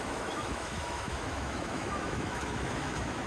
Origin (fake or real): fake